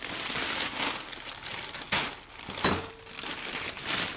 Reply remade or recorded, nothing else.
recorded